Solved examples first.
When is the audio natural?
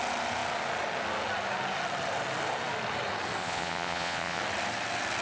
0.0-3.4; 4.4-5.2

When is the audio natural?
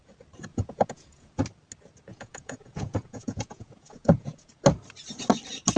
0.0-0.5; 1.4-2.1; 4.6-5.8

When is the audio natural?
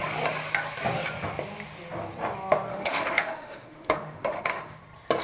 0.0-2.7; 4.8-5.2